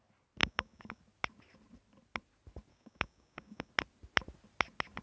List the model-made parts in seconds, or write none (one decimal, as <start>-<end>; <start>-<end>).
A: 0.4-1.0; 2.7-3.7